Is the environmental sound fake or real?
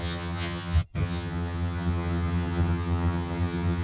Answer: fake